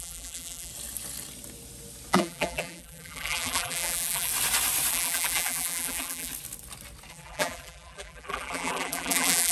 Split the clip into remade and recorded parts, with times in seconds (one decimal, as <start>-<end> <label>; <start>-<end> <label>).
0.0-0.7 remade; 0.7-2.1 recorded; 2.1-4.3 remade; 4.3-4.9 recorded; 4.9-6.3 remade; 6.3-7.1 recorded; 7.1-9.5 remade